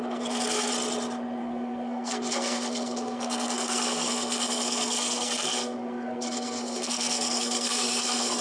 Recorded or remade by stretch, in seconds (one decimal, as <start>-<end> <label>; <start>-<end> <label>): 0.0-0.7 remade; 0.7-1.4 recorded; 1.4-8.4 remade